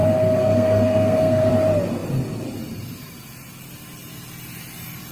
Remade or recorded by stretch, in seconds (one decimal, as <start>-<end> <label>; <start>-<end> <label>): 0.0-1.5 remade; 1.5-5.1 recorded